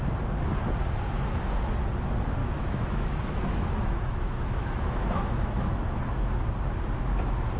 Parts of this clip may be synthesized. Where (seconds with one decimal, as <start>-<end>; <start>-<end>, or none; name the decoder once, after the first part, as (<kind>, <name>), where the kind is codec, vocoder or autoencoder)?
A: 2.4-6.4 (autoencoder, DAC-VAE)